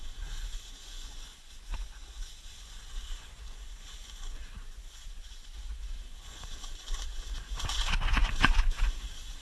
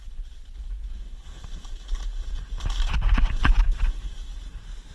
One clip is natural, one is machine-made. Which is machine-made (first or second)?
first